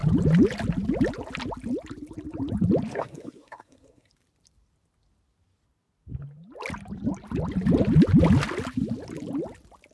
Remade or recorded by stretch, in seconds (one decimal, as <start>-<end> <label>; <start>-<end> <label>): 0.0-2.9 recorded; 2.9-4.1 remade; 4.1-9.9 recorded